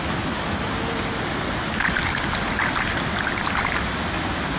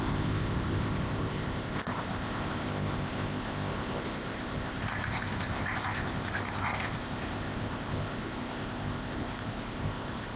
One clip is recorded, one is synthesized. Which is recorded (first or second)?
first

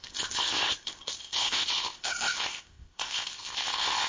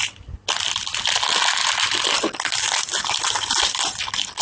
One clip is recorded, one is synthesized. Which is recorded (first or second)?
second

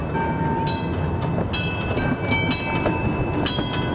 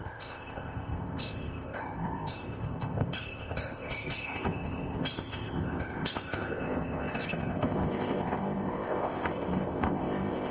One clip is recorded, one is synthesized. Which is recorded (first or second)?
first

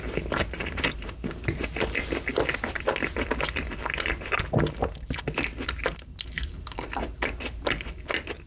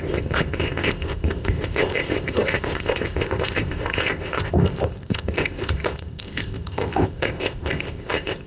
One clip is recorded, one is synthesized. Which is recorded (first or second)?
first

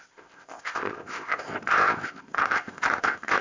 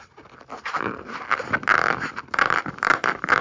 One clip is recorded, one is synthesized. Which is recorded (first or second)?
second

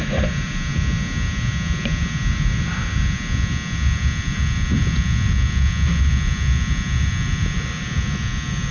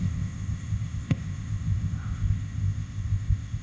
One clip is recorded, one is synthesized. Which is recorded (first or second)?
first